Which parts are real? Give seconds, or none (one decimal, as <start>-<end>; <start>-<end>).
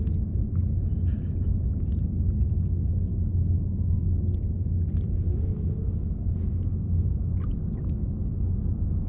0.0-9.1